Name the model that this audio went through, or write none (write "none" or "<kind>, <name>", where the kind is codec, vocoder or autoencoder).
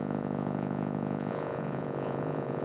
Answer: vocoder, Vocos